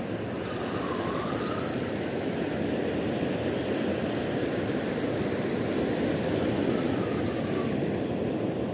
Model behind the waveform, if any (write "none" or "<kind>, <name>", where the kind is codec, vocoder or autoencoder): vocoder, BigVGAN v2